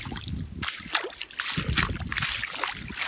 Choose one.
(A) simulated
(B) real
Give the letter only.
B